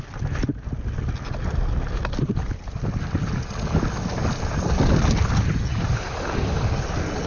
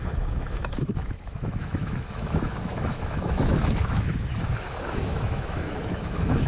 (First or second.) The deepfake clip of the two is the second